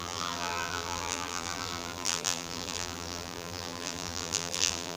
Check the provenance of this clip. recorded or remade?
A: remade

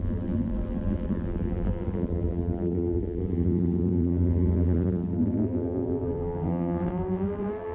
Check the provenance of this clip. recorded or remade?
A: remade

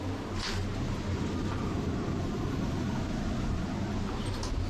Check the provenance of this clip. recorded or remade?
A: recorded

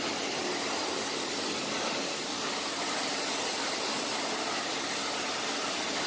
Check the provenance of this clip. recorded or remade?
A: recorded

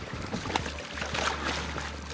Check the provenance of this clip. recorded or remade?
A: recorded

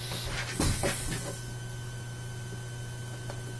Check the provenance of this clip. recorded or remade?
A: recorded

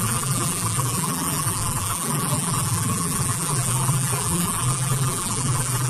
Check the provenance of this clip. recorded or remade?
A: remade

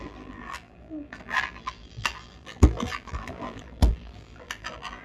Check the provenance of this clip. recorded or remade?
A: remade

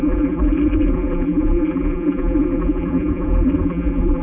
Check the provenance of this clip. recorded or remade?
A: remade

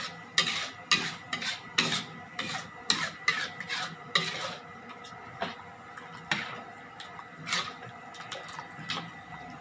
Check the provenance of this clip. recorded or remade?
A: recorded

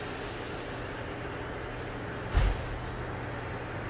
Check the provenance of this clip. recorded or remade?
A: recorded